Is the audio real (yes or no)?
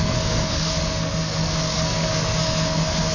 no